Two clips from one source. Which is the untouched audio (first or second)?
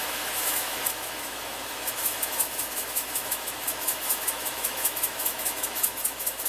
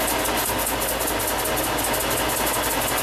second